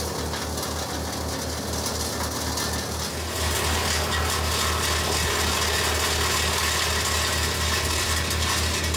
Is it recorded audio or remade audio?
recorded